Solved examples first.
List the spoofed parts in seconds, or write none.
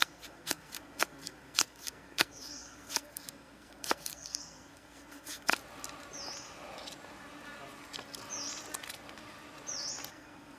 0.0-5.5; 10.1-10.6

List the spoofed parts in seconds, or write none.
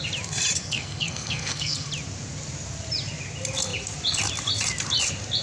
0.6-1.9